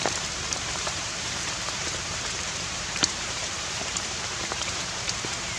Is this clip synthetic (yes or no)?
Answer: yes